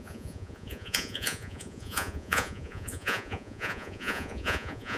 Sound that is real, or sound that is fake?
fake